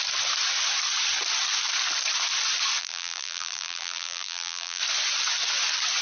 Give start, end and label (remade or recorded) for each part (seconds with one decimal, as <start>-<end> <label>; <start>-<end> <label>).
0.0-2.8 recorded; 2.8-4.8 remade; 4.8-6.0 recorded